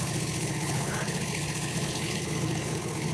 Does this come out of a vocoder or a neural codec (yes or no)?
yes